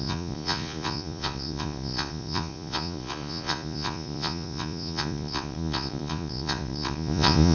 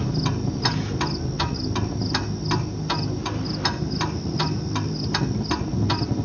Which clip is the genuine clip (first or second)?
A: second